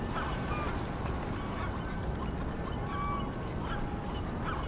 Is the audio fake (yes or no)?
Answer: no